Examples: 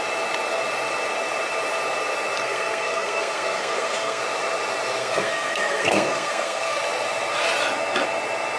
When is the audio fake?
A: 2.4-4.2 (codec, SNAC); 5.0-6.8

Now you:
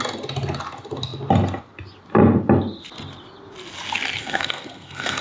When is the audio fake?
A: 4.2-5.2 (codec, SNAC)

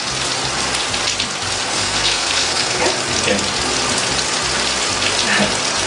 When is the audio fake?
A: 1.7-2.8 (codec, SNAC)

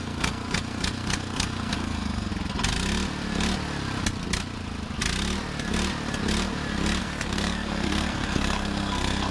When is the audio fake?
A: 0.0-2.3 (codec, SNAC); 7.0-9.3